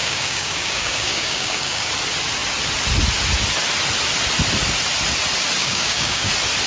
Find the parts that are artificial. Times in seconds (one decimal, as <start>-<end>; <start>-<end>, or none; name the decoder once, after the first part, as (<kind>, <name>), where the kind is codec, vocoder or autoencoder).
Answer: 0.0-1.9 (codec, DAC); 5.6-6.3